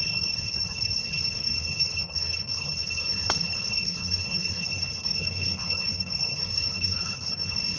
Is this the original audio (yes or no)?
no